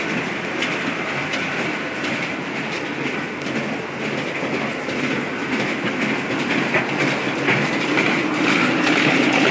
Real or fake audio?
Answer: real